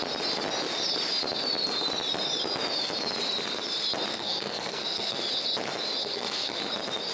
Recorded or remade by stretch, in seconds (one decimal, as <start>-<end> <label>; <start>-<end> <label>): 0.0-4.1 recorded; 4.1-5.2 remade; 5.2-6.0 recorded; 6.0-6.6 remade; 6.6-7.1 recorded